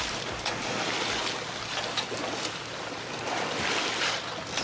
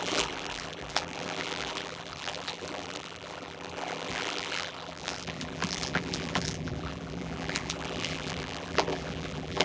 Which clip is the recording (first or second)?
first